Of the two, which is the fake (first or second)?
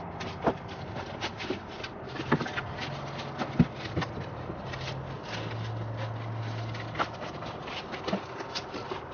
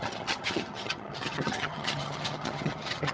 second